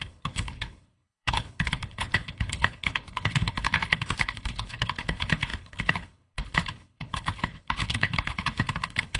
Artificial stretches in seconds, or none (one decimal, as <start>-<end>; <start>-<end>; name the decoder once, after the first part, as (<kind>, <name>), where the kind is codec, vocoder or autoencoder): 0.0-9.2 (codec, HILCodec)